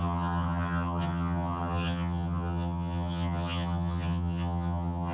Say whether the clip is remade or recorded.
remade